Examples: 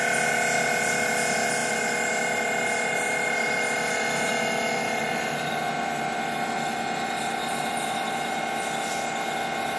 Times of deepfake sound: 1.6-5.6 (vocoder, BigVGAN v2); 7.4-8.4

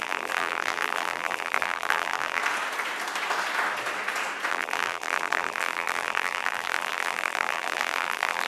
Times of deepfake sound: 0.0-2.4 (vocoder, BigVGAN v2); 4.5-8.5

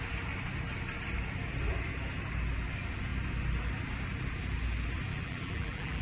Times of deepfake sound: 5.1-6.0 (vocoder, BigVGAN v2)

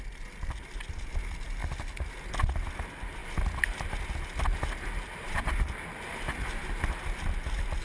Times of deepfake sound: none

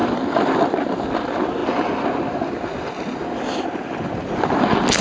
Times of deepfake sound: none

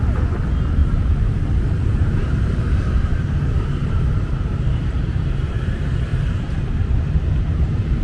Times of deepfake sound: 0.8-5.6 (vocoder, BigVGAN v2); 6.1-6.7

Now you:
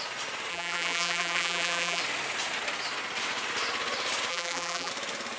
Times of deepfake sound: 0.5-2.0 (vocoder, BigVGAN v2); 4.3-4.9